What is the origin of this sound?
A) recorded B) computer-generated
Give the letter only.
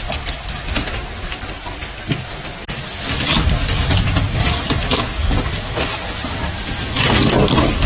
A